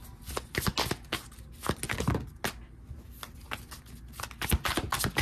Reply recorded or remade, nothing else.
recorded